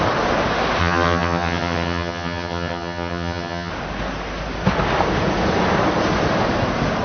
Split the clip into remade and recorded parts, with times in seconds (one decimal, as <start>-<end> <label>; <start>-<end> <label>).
0.0-0.8 recorded; 0.8-3.7 remade; 3.7-7.0 recorded